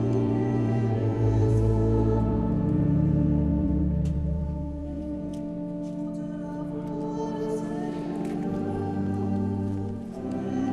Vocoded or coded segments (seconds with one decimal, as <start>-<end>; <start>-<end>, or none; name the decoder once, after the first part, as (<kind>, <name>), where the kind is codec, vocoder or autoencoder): 0.0-5.3 (vocoder, Vocos); 9.0-10.7